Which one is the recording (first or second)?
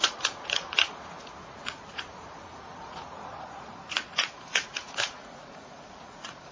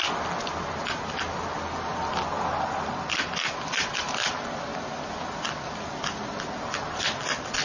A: second